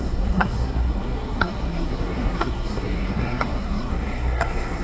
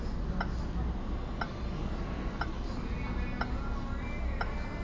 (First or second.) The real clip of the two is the second